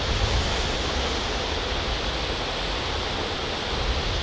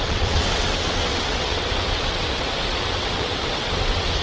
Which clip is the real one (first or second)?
first